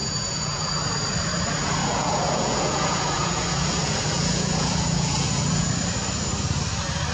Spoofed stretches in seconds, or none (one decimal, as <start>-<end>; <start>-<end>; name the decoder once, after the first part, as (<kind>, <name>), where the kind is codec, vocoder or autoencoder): 0.0-0.7 (vocoder, Vocos); 1.8-5.7